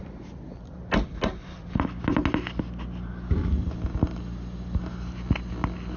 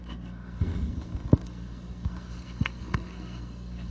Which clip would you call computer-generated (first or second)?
second